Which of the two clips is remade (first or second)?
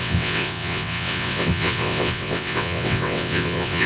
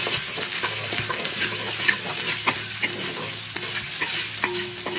first